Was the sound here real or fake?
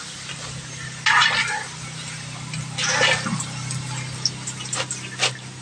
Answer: real